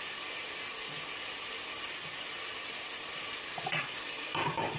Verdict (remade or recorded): recorded